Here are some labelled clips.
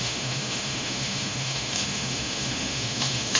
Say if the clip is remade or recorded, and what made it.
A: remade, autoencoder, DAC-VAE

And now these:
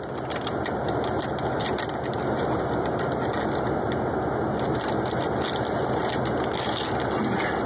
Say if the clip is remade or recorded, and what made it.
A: recorded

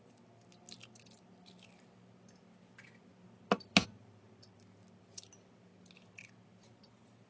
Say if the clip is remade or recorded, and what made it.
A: recorded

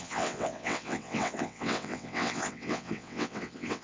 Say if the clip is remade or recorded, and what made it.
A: remade, vocoder, WaveNeXt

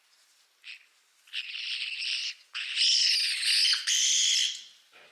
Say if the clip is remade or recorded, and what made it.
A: recorded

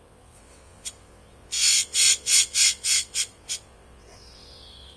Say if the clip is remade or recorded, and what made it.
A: remade, vocoder, WaveNeXt